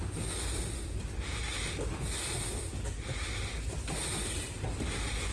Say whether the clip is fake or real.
real